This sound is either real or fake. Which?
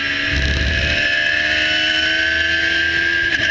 real